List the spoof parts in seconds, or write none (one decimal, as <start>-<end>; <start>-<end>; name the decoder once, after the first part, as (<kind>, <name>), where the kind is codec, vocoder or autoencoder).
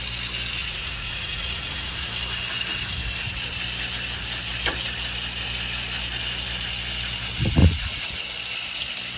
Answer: 0.6-2.1 (vocoder, Vocos); 7.6-8.2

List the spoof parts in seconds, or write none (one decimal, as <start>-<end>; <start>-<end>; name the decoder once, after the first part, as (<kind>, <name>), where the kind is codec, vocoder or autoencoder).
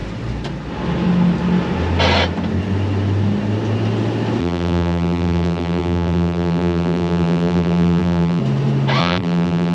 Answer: 4.4-8.4 (vocoder, BigVGAN v2); 9.0-9.7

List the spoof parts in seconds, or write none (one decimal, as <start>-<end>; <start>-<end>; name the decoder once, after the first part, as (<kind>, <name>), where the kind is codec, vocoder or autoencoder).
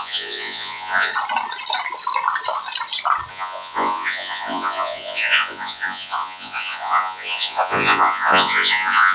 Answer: 0.0-1.1 (vocoder, Vocos); 3.3-9.1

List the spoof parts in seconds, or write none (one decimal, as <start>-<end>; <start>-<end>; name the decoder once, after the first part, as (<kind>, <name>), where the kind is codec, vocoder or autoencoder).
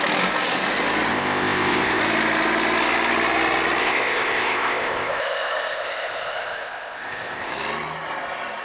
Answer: 1.1-2.0 (codec, ZipCodec); 3.8-7.5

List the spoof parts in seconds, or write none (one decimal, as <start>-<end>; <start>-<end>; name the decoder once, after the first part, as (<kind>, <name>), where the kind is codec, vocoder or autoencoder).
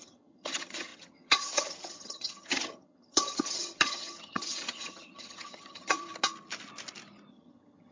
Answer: 0.0-6.1 (vocoder, HiFi-GAN); 7.3-7.9